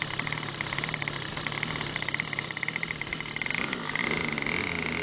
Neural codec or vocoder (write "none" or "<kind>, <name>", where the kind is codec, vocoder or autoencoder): none